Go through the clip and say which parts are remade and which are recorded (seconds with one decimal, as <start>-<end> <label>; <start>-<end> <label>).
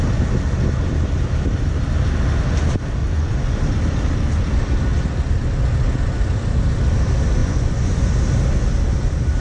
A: 0.0-3.0 recorded; 3.0-3.6 remade; 3.6-7.4 recorded; 7.4-8.1 remade; 8.1-9.4 recorded